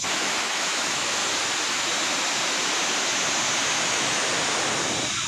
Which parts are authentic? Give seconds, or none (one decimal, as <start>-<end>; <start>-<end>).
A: 1.2-3.7; 4.2-5.3